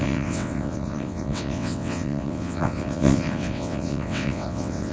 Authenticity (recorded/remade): remade